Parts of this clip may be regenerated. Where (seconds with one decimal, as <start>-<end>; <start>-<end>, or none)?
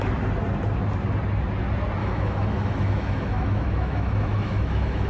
2.0-5.1